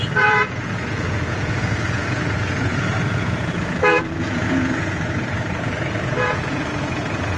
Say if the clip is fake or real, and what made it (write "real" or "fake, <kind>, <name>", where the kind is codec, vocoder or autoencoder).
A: fake, vocoder, Vocos